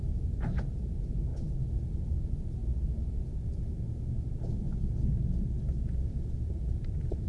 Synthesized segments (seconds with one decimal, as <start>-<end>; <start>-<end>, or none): 0.0-1.3; 2.2-2.6; 5.9-7.3